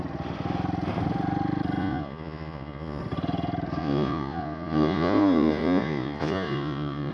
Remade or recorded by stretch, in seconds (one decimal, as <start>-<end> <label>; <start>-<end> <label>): 0.0-1.8 recorded; 1.8-3.0 remade; 3.0-3.8 recorded; 3.8-7.1 remade